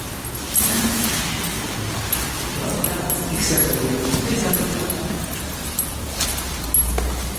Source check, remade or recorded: recorded